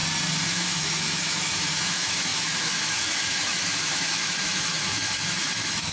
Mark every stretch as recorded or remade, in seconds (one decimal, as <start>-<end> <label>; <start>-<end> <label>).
0.0-0.5 recorded; 0.5-5.9 remade